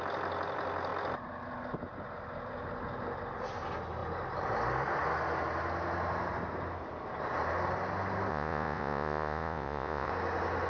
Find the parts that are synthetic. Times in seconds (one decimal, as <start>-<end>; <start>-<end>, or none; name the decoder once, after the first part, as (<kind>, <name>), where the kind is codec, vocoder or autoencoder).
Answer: 8.3-10.1 (vocoder, Vocos)